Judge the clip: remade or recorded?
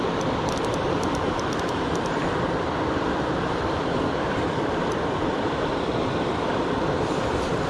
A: remade